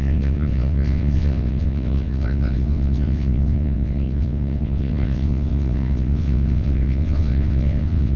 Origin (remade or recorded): remade